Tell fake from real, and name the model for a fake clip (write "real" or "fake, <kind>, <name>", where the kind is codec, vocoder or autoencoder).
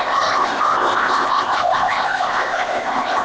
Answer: fake, codec, ZipCodec